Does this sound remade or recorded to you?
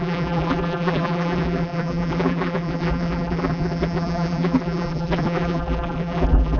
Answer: remade